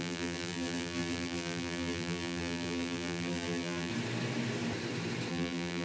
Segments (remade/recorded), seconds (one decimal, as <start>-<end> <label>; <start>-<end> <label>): 0.0-3.9 remade; 3.9-5.3 recorded; 5.3-5.8 remade